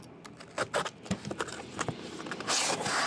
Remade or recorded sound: recorded